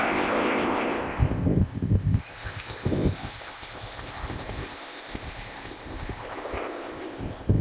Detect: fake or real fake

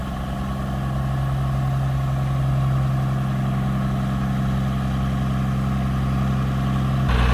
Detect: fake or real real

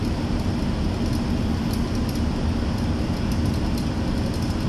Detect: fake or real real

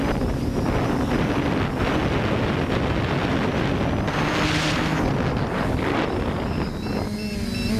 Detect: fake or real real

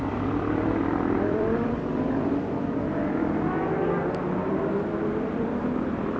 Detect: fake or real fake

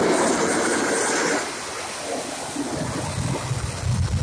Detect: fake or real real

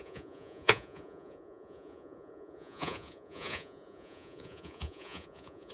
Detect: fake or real fake